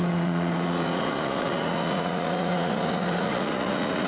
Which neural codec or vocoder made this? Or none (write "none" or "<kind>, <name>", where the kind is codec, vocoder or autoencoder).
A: vocoder, Vocos